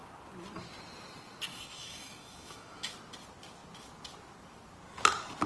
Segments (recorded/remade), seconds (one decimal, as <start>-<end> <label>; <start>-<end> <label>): 0.0-1.5 recorded; 1.5-2.9 remade; 2.9-5.5 recorded